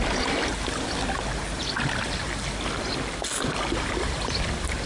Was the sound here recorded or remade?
recorded